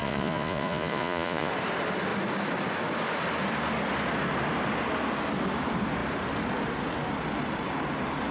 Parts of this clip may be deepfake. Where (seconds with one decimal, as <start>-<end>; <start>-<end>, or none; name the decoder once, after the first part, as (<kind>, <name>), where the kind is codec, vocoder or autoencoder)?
0.0-1.5 (vocoder, Vocos)